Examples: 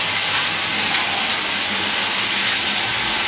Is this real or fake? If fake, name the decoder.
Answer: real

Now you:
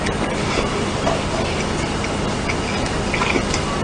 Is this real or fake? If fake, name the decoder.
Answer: real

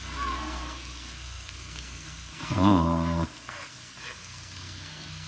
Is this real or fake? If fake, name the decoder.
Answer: fake, codec, SNAC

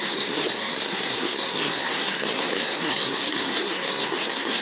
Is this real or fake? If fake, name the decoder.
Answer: fake, codec, SNAC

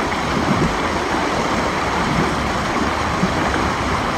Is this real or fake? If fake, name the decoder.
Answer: real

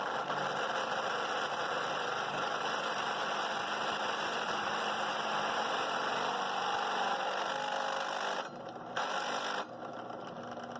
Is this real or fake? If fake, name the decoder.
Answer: real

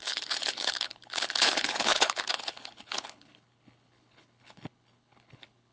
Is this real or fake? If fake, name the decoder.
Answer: fake, codec, HILCodec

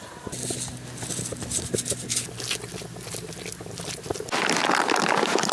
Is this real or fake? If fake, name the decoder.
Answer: real